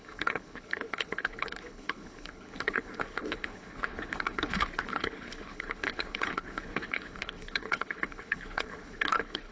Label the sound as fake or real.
fake